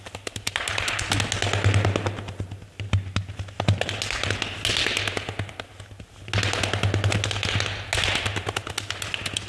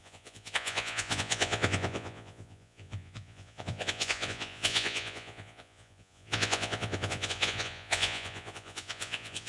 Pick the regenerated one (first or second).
second